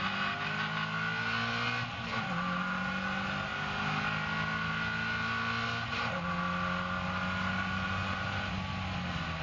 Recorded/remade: recorded